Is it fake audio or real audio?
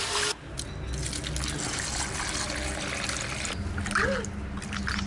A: real